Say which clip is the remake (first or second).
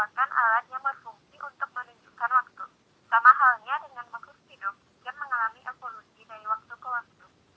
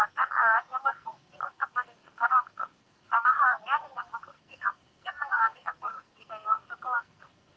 second